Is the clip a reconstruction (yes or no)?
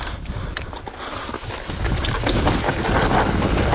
no